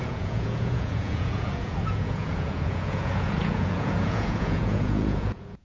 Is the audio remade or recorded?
remade